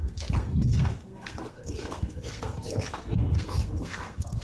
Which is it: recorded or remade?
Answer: remade